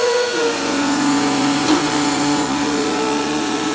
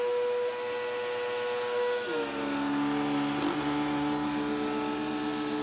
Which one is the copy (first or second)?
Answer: first